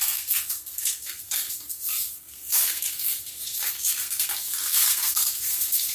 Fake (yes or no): yes